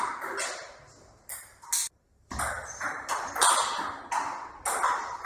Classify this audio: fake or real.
real